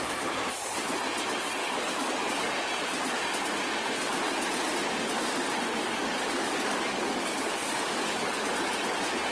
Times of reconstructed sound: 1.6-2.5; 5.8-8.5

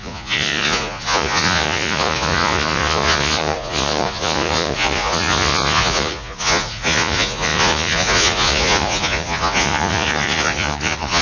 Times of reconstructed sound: 0.0-11.2

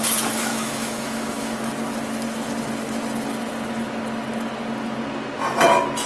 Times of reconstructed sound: 0.5-1.6

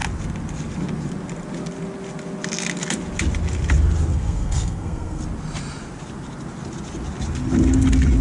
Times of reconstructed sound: 4.1-5.2

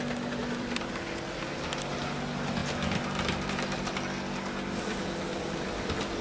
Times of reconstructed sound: 0.4-0.9